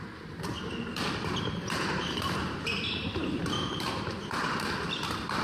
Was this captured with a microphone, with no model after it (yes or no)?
no